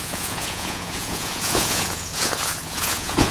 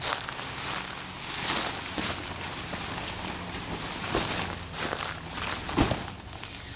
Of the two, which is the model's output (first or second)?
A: first